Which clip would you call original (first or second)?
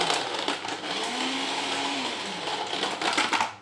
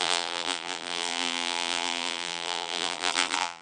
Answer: first